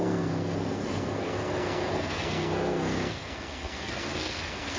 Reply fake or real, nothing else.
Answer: fake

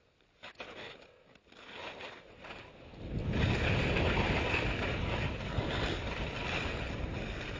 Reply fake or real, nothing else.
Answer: real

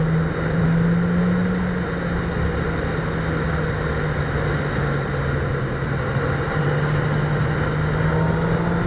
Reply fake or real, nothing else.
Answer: real